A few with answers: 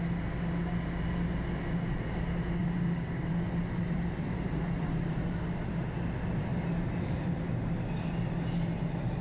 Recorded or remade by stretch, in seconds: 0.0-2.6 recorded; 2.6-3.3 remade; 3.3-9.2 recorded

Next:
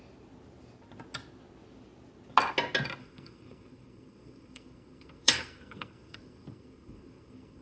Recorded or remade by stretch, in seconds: 0.0-3.0 recorded; 3.0-7.6 remade

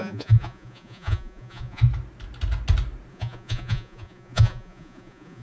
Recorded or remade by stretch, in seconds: 0.0-1.8 remade; 1.8-3.1 recorded; 3.1-5.4 remade

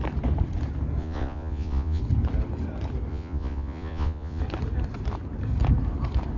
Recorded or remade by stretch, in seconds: 0.0-1.0 recorded; 1.0-2.0 remade; 2.0-3.1 recorded; 3.1-4.4 remade; 4.4-6.4 recorded

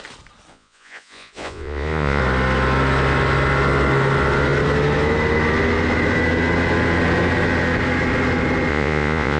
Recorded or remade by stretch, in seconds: 0.0-0.5 recorded; 0.5-2.2 remade; 2.2-8.7 recorded; 8.7-9.4 remade

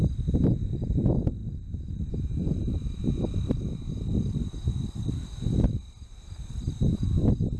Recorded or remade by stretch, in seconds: 0.0-7.6 recorded